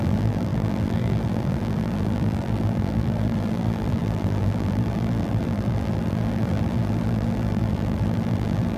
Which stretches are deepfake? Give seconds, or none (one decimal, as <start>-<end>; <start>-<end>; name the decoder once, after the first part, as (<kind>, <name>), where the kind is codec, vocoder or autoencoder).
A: 0.0-8.8 (vocoder, BigVGAN v2)

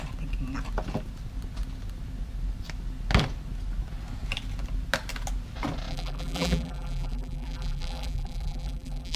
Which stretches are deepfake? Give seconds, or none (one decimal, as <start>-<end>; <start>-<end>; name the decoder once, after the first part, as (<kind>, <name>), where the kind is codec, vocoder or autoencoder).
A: 5.9-9.2 (vocoder, BigVGAN v2)

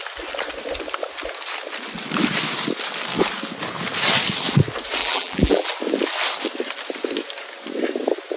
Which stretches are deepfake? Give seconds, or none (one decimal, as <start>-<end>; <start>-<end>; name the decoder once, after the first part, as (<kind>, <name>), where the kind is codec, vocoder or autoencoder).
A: 5.0-5.7 (vocoder, BigVGAN v2)